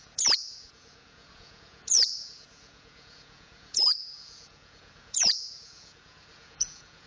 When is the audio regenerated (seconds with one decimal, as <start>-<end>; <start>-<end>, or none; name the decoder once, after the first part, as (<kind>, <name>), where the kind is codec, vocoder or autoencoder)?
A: 0.0-7.1 (vocoder, Vocos)